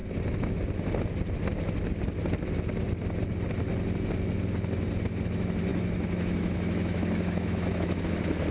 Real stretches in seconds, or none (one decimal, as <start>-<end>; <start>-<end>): 0.0-5.7; 8.0-8.5